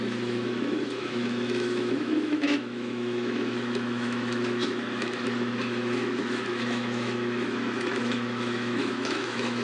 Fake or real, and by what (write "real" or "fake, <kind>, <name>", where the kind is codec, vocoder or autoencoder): fake, autoencoder, DAC-VAE